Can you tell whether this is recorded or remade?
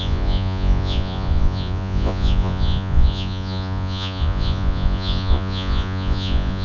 remade